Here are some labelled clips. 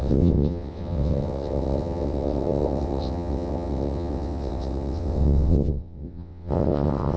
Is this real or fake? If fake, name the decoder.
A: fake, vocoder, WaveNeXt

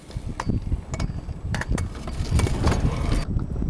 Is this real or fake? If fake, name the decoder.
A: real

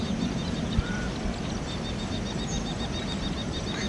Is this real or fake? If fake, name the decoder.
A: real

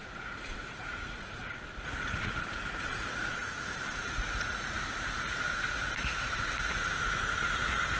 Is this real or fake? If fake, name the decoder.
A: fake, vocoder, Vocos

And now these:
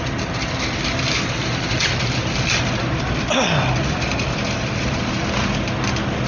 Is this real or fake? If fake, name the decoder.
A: real